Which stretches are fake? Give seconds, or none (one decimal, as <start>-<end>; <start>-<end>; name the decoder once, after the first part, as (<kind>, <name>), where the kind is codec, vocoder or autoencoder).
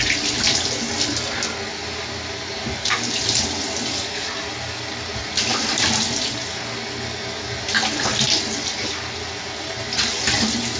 none